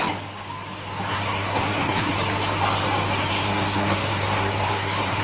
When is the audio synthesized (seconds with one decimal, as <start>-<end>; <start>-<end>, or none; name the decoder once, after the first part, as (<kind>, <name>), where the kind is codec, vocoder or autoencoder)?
1.1-2.1 (codec, SNAC); 3.3-5.2